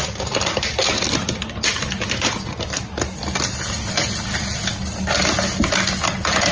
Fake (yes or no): no